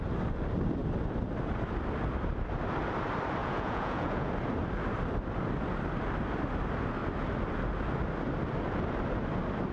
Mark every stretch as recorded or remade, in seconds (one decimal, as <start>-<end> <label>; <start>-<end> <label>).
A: 0.0-3.4 recorded; 3.4-4.3 remade; 4.3-9.7 recorded